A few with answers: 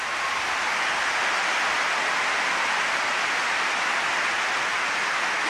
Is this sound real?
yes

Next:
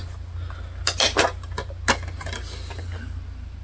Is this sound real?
yes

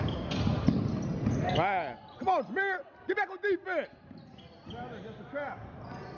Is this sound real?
yes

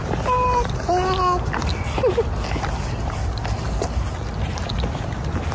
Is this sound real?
yes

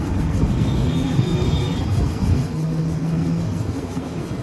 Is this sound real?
no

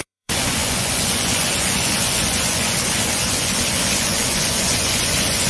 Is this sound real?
no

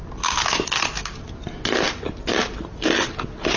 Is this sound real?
yes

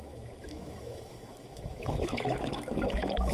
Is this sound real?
no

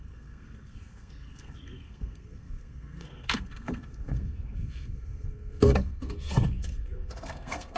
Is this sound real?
no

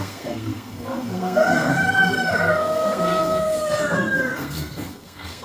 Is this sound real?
no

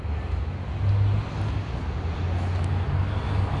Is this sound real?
yes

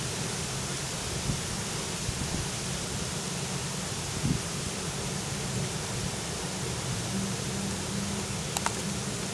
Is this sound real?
yes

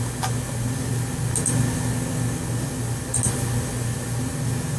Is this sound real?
yes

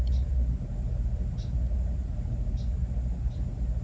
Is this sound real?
yes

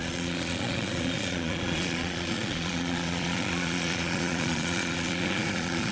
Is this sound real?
no